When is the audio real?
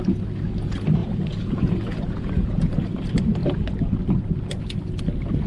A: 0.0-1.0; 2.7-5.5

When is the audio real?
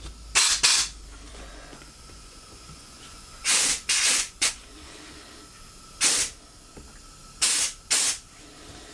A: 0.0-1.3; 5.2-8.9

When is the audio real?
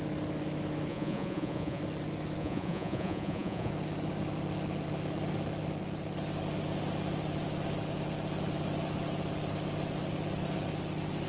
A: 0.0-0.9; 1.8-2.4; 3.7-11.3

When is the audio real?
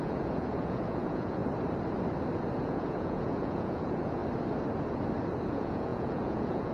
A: 1.4-2.6; 4.2-5.5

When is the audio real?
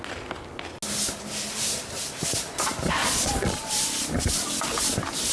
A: 0.0-3.0; 3.6-5.3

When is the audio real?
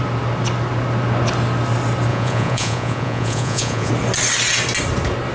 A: 0.0-2.1; 3.9-5.3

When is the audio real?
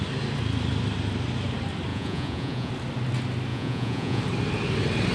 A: 0.0-1.9; 2.7-3.5; 4.2-5.1